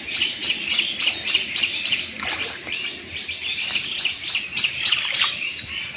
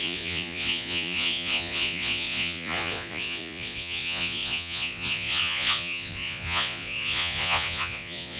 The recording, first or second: first